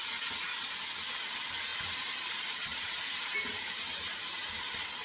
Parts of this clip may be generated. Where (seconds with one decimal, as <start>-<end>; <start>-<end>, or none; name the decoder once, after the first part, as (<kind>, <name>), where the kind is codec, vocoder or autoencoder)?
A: 1.7-4.6 (vocoder, BigVGAN v2)